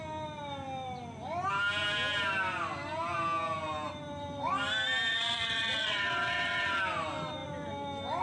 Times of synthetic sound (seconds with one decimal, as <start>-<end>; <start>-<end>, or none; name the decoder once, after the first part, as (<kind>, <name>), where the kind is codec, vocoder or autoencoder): 5.1-6.8 (vocoder, WaveNeXt)